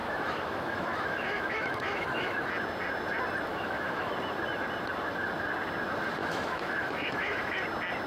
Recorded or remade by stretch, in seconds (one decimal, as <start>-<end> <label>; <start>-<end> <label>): 0.0-2.5 remade; 2.5-3.5 recorded; 3.5-4.1 remade; 4.1-6.2 recorded; 6.2-7.6 remade; 7.6-8.1 recorded